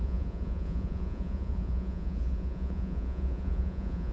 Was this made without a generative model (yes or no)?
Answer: no